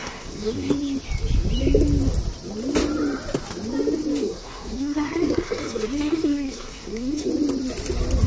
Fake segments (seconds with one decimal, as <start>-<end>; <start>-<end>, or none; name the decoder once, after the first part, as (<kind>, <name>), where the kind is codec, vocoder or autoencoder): 0.0-0.7 (codec, SNAC); 4.2-7.3